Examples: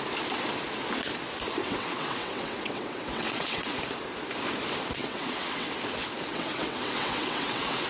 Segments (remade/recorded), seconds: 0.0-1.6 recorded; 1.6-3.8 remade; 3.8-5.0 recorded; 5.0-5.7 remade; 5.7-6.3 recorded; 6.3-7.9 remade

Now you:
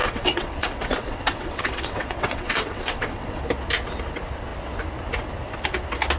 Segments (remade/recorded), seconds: 0.0-3.4 remade; 3.4-6.2 recorded